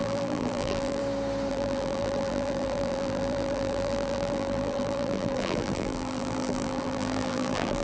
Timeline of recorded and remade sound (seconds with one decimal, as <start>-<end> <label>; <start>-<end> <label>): 0.0-1.0 remade; 1.0-1.5 recorded; 1.5-7.8 remade